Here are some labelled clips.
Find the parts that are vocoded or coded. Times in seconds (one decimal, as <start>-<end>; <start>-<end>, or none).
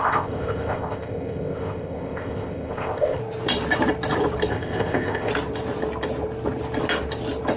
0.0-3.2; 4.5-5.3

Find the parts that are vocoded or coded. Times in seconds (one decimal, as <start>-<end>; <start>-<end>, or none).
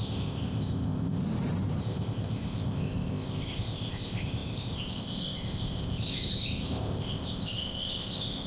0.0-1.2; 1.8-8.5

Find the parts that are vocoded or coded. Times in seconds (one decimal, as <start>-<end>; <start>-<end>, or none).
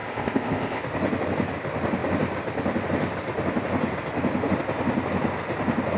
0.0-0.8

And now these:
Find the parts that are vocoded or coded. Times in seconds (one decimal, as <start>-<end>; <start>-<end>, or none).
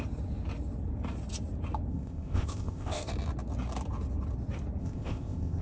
1.9-3.1; 4.8-5.6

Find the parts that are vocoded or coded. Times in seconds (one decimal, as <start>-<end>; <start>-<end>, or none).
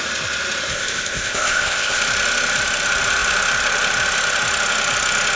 0.7-2.0